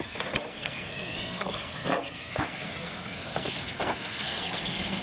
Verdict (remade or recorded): remade